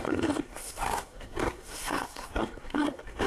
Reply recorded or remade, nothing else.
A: remade